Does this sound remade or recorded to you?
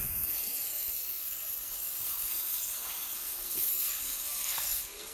remade